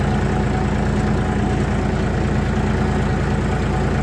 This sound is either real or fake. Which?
real